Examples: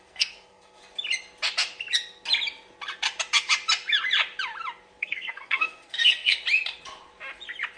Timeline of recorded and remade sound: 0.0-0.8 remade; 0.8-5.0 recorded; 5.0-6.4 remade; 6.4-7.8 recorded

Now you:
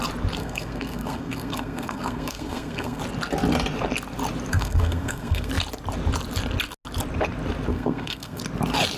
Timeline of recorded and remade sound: 0.0-0.4 recorded; 0.4-3.0 remade; 3.0-4.5 recorded; 4.5-5.5 remade; 5.5-7.7 recorded; 7.7-8.4 remade; 8.4-9.0 recorded

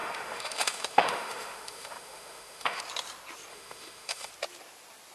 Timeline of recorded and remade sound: 0.0-2.8 remade; 2.8-3.5 recorded; 3.5-4.3 remade; 4.3-5.1 recorded

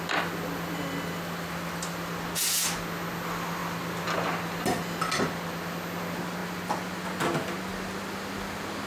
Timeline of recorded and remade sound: 0.0-8.9 recorded

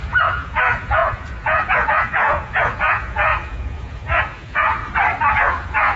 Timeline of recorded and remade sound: 0.0-4.8 remade; 4.8-5.3 recorded; 5.3-6.0 remade

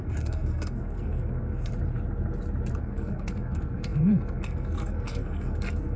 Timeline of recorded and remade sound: 0.0-1.7 remade; 1.7-2.8 recorded; 2.8-6.0 remade

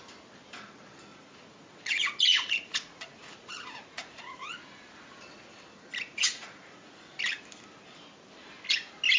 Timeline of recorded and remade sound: 0.0-1.1 recorded; 1.1-5.1 remade; 5.1-6.1 recorded; 6.1-7.1 remade; 7.1-9.2 recorded